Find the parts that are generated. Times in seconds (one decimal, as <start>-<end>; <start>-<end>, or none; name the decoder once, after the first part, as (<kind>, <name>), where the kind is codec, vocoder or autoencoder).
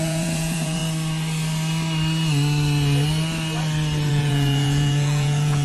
0.0-0.8 (vocoder, Vocos); 4.1-5.6